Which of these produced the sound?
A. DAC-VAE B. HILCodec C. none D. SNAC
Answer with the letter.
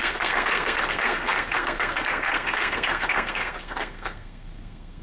D